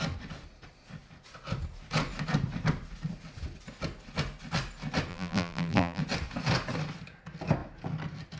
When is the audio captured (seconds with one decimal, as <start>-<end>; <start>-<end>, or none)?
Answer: 0.0-5.1; 6.0-8.4